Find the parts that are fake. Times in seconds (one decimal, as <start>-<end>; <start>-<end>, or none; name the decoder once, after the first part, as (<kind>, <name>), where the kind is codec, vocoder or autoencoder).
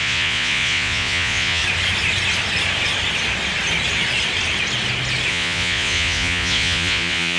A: 0.0-1.6 (vocoder, Vocos); 5.3-7.4